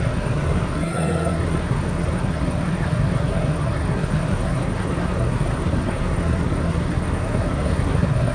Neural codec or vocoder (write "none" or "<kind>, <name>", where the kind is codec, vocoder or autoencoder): codec, SNAC